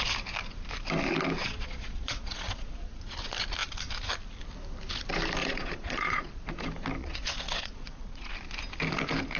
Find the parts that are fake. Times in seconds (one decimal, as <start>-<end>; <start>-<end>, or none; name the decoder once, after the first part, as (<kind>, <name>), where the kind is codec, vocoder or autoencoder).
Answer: 1.4-3.0 (vocoder, Vocos); 5.4-6.3; 7.0-8.3

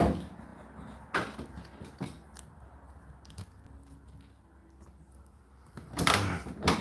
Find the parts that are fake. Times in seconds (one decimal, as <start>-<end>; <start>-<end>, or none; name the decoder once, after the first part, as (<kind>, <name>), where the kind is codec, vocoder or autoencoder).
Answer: 4.6-6.8 (vocoder, BigVGAN v2)

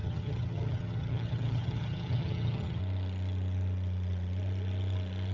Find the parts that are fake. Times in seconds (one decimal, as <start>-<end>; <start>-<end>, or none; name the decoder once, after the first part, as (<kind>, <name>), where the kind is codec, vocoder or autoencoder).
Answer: 0.0-2.8 (vocoder, HiFi-GAN)

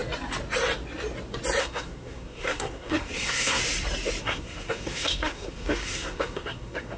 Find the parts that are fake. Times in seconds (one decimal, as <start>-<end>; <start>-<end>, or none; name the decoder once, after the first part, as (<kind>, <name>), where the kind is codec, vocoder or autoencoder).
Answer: 1.6-3.6 (codec, SNAC); 4.2-7.0

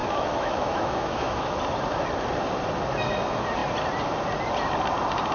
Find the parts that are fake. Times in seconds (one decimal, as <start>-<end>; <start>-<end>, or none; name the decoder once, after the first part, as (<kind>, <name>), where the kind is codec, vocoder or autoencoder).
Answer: 0.0-1.6 (autoencoder, DAC-VAE)

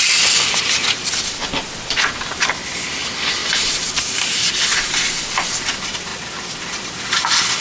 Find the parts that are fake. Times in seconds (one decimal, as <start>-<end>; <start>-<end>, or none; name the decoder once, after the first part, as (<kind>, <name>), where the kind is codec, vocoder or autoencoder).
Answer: 3.4-4.4 (vocoder, BigVGAN v2)